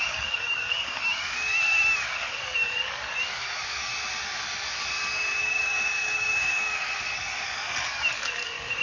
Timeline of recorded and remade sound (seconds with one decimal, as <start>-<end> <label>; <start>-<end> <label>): 0.0-3.9 remade; 3.9-5.4 recorded; 5.4-8.8 remade